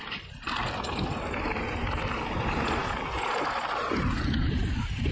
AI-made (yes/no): no